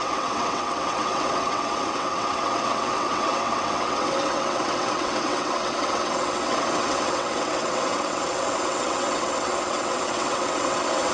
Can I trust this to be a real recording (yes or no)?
no